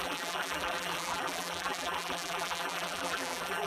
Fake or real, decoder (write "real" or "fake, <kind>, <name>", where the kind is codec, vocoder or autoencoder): fake, vocoder, BigVGAN v2